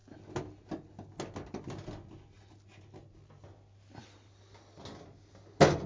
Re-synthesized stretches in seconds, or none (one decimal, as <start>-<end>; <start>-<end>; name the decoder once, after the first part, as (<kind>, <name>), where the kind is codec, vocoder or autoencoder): none